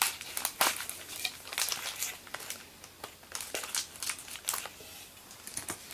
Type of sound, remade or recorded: recorded